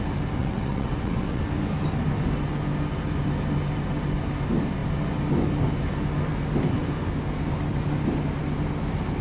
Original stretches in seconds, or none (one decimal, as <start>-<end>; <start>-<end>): 0.0-0.4; 1.4-9.2